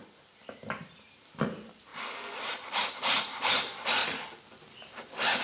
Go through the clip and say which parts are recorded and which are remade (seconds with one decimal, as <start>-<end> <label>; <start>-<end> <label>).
0.0-1.9 remade; 1.9-2.5 recorded; 2.5-4.0 remade; 4.0-4.6 recorded; 4.6-5.4 remade